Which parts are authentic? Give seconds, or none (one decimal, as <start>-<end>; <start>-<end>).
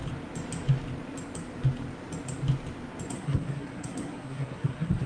0.0-3.1